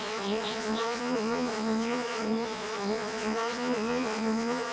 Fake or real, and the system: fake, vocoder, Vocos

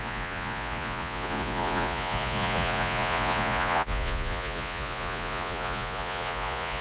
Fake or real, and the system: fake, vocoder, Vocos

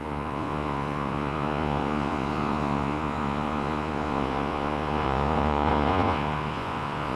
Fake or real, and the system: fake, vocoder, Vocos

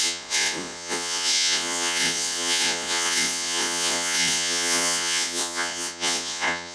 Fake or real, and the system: fake, vocoder, Vocos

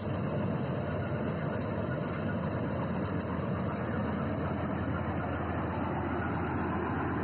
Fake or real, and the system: real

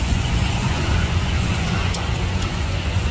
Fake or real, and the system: fake, vocoder, Vocos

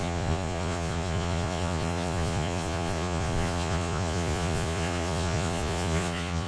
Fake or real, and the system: fake, vocoder, Vocos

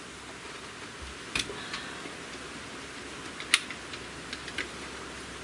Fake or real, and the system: real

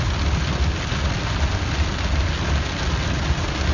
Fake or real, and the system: real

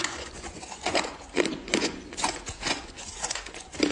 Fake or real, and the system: fake, vocoder, Vocos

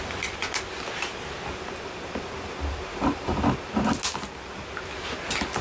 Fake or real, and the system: real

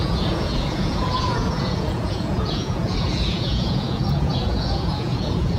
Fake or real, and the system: fake, vocoder, Vocos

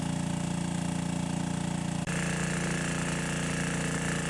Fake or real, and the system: real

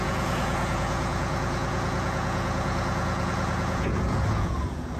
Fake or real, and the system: fake, vocoder, Vocos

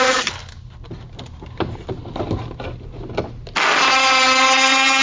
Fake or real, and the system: real